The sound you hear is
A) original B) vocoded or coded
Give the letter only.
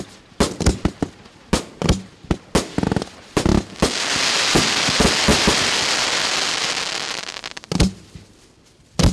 A